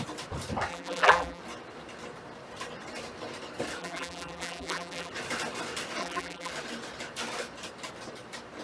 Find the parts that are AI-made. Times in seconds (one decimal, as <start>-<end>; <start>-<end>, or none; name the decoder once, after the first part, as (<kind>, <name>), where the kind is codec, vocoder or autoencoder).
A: 0.7-1.4 (vocoder, BigVGAN v2); 3.8-5.1; 6.0-6.5